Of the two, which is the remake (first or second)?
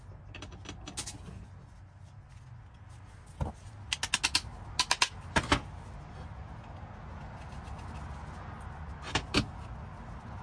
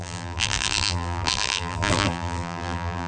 second